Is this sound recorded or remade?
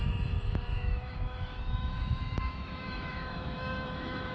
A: remade